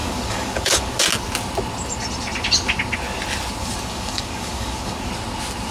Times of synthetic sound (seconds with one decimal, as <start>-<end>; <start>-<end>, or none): 0.0-1.0; 3.6-5.1

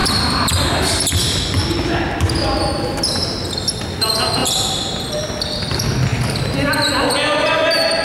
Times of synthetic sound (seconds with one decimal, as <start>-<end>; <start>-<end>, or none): 4.4-5.0

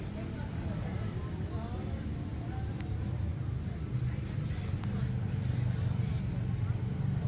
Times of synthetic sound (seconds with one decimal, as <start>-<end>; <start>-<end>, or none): none

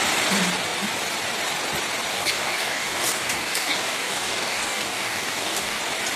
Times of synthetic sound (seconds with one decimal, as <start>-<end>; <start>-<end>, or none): 2.1-5.8

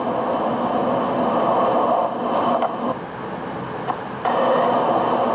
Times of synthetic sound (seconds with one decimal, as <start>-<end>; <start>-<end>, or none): none

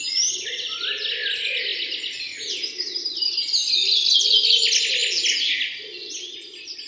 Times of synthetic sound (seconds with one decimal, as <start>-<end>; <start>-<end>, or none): none

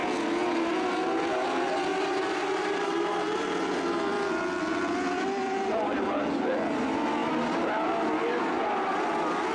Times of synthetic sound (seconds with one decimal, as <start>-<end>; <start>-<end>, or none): 1.9-6.3; 7.2-7.9

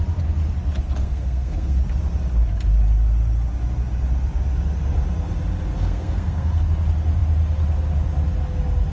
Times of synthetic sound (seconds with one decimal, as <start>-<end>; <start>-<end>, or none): 1.0-1.8; 5.7-6.6